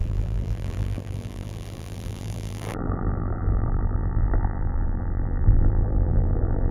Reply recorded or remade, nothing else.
remade